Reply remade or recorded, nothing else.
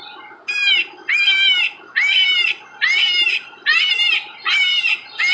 recorded